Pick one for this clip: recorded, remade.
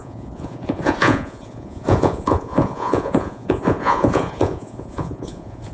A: remade